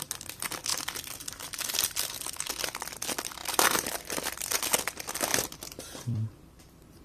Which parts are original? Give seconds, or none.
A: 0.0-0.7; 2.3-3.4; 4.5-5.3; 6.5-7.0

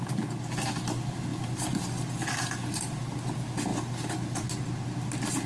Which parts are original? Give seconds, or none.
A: 0.0-3.7; 4.5-5.5

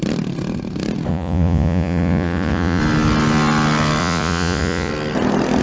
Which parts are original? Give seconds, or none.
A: 0.0-1.1; 2.8-4.0; 4.9-5.6

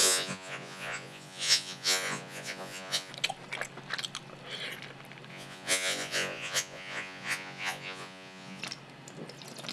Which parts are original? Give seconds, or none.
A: 3.1-5.3; 8.6-9.7

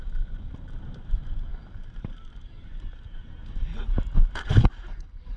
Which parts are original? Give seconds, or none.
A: 1.5-2.0

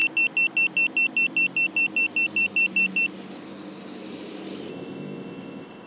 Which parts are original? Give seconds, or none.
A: 0.0-4.7

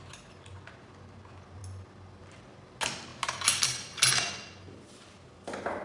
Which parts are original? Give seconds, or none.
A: 0.0-5.8